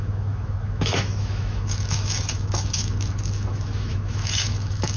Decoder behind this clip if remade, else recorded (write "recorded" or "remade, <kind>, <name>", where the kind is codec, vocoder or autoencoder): remade, autoencoder, DAC-VAE